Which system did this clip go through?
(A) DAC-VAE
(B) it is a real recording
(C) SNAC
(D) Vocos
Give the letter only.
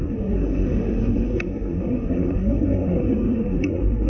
C